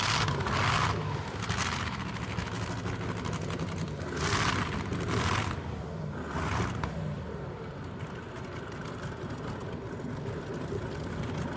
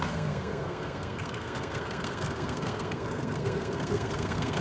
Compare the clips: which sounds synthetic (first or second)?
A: second